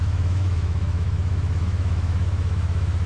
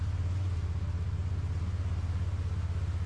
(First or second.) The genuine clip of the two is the second